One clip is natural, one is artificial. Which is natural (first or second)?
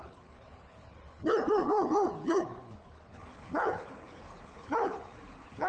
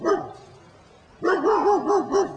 second